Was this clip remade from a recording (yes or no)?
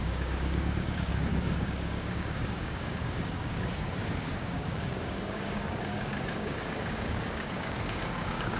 yes